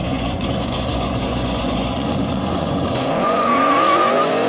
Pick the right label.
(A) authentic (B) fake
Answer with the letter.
B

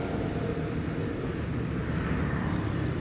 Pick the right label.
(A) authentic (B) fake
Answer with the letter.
A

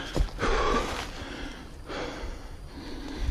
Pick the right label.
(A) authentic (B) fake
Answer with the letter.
A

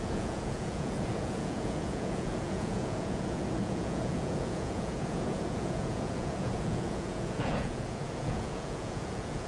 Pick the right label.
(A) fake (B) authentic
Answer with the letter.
A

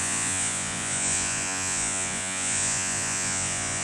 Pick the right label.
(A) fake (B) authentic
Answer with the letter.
A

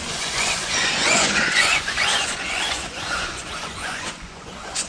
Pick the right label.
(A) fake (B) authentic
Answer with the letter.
A